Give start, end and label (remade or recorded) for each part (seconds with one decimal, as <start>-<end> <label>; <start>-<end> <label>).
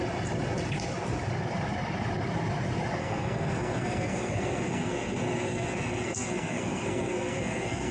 0.0-3.0 recorded; 3.0-7.9 remade